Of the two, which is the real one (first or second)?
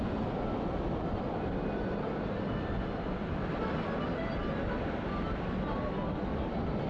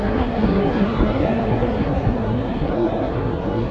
first